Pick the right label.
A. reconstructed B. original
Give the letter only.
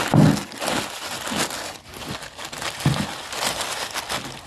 B